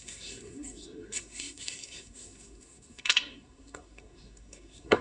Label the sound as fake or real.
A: fake